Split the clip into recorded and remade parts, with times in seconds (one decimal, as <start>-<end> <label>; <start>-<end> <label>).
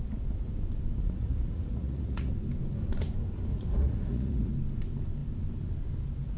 0.0-1.0 recorded; 1.0-2.3 remade; 2.3-3.5 recorded; 3.5-4.5 remade; 4.5-6.4 recorded